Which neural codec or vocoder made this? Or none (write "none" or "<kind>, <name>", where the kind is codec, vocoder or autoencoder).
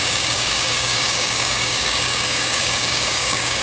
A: codec, DAC